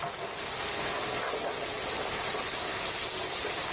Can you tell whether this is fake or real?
real